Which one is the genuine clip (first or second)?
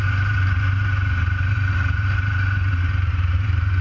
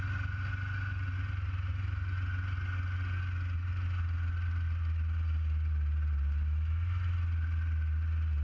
second